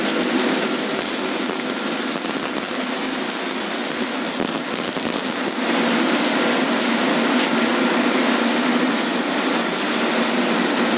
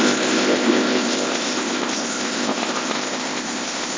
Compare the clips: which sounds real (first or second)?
first